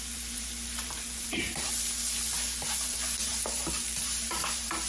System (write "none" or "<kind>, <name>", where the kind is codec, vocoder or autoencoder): vocoder, BigVGAN v2